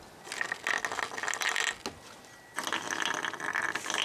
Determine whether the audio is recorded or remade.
recorded